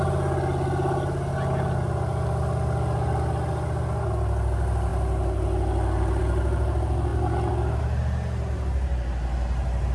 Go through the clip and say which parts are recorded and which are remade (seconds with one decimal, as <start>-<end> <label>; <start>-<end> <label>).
0.0-9.9 recorded